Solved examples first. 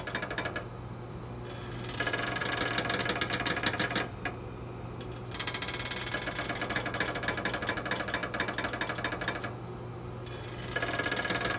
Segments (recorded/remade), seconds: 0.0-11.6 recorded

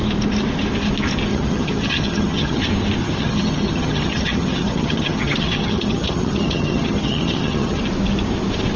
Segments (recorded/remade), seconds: 0.0-1.3 recorded; 1.3-2.6 remade; 2.6-3.0 recorded; 3.0-7.8 remade; 7.8-8.8 recorded